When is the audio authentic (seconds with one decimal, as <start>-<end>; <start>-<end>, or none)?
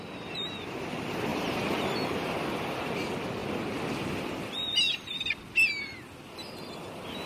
0.0-1.3; 1.8-7.3